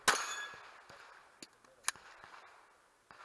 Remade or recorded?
recorded